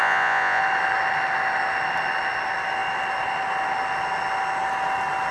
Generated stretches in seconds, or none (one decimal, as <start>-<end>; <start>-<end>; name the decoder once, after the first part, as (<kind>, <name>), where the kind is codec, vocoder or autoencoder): 0.0-0.6 (vocoder, Vocos)

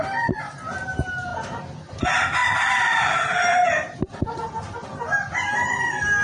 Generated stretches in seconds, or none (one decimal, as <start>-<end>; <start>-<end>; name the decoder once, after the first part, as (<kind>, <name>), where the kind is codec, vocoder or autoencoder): none

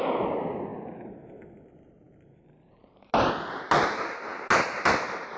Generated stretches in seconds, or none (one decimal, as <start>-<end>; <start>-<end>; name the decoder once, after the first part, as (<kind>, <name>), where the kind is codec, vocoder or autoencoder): none

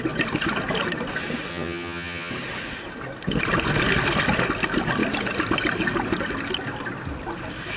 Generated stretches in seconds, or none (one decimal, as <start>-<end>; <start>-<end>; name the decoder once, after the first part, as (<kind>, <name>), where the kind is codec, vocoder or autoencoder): 1.5-2.3 (vocoder, HiFi-GAN)

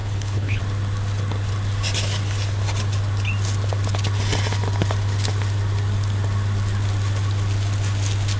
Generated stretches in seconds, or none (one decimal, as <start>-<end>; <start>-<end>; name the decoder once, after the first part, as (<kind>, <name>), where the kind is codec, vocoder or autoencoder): 0.0-0.6 (codec, HILCodec)

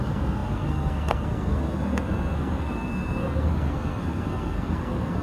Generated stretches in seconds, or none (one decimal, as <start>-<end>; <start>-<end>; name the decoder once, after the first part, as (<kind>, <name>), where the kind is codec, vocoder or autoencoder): 0.0-5.2 (codec, SNAC)